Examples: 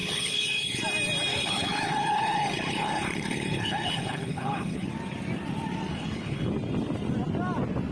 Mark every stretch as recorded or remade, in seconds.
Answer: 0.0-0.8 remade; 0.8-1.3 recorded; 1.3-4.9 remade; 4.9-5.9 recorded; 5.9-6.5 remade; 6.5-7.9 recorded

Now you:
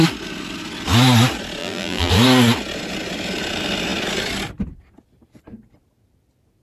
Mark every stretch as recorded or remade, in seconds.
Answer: 0.0-1.6 recorded; 1.6-2.1 remade; 2.1-6.6 recorded

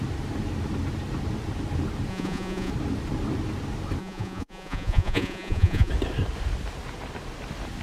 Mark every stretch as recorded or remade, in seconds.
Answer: 0.0-2.1 recorded; 2.1-2.7 remade; 2.7-4.0 recorded; 4.0-5.9 remade; 5.9-7.8 recorded

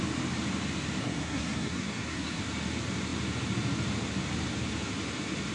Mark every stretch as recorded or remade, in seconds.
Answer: 0.0-1.0 recorded; 1.0-2.4 remade; 2.4-5.5 recorded

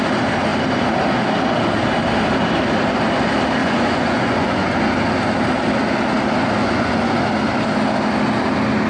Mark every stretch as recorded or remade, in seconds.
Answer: 0.0-3.6 recorded; 3.6-4.8 remade; 4.8-6.6 recorded; 6.6-7.2 remade; 7.2-8.9 recorded

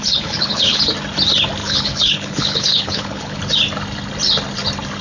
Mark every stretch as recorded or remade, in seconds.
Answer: 0.0-0.8 remade; 0.8-1.6 recorded; 1.6-3.4 remade; 3.4-5.0 recorded